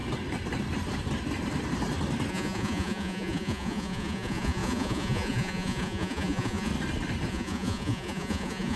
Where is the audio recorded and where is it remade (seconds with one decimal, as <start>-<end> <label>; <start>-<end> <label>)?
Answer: 0.0-2.3 recorded; 2.3-6.7 remade; 6.7-7.3 recorded; 7.3-8.8 remade